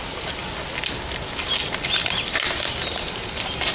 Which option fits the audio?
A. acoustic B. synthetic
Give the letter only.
A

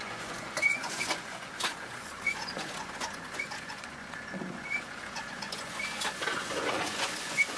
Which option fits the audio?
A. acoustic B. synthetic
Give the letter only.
B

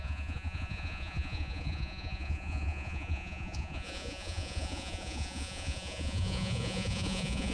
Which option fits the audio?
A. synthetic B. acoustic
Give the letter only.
A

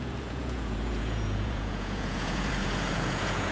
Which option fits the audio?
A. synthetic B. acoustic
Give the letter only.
A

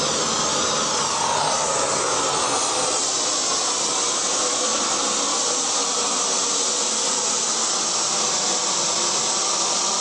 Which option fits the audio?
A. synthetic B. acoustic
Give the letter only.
B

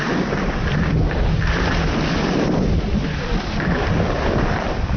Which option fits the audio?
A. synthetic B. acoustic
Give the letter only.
B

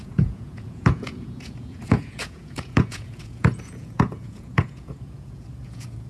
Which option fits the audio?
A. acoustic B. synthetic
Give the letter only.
B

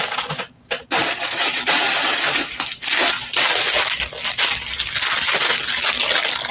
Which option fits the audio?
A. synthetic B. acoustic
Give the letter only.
B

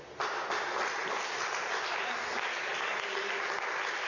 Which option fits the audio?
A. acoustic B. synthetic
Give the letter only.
A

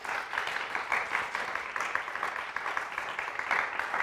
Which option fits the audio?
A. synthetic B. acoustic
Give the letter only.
B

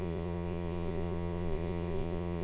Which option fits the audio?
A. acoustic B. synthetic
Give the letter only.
B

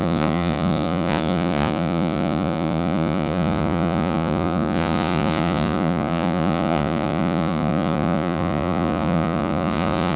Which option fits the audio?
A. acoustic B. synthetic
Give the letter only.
B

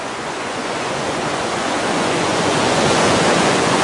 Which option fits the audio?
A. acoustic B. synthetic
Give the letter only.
B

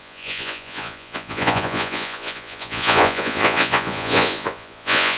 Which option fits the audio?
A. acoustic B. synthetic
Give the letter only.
B